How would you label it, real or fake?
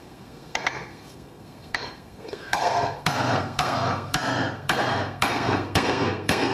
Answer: fake